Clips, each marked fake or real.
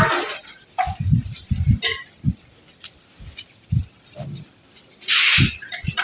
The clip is real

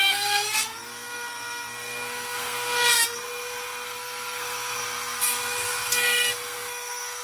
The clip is fake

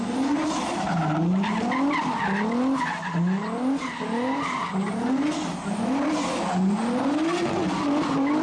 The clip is real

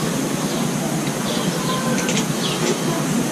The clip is real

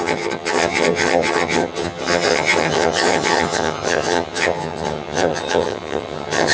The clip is fake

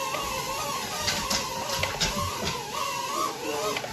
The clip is real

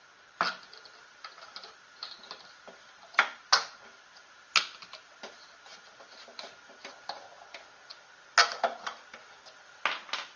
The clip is real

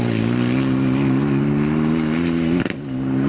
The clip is real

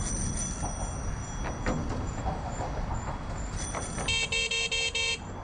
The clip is real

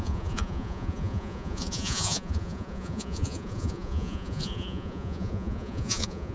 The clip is fake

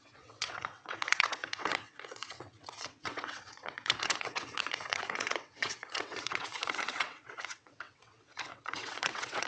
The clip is fake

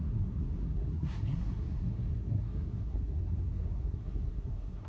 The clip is fake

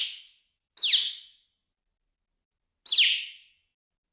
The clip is real